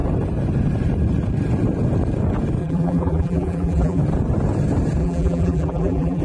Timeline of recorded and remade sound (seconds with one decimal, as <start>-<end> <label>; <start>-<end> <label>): 0.0-2.6 recorded; 2.6-4.0 remade; 4.0-5.0 recorded; 5.0-6.2 remade